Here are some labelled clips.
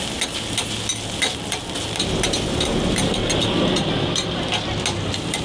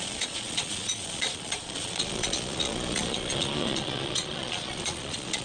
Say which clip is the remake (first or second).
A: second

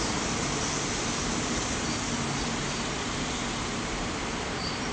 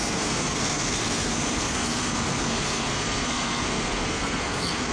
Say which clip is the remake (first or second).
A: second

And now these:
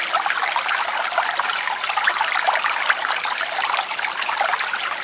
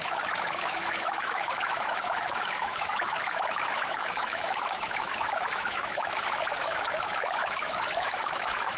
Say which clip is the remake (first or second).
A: second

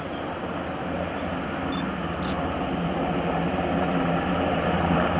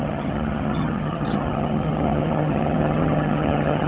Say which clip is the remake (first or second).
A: second